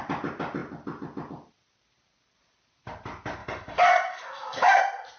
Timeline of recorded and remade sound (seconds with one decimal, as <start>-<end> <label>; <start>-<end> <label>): 0.0-3.4 recorded; 3.4-4.8 remade; 4.8-5.2 recorded